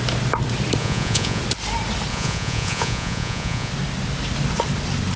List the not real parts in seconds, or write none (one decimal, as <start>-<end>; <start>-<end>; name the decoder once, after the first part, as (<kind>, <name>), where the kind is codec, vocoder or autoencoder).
0.8-1.4 (vocoder, Vocos); 2.1-3.7